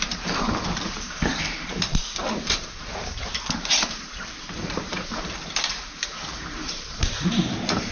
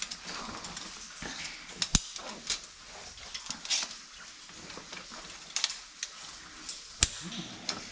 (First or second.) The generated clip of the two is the first